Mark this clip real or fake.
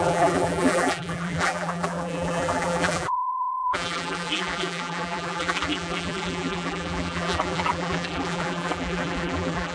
fake